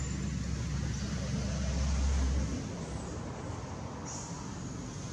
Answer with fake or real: real